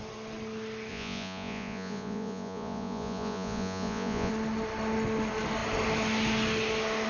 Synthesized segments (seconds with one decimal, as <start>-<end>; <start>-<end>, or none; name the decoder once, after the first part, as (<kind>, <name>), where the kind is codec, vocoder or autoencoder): 0.9-4.3 (vocoder, Vocos)